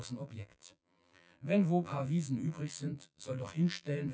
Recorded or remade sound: remade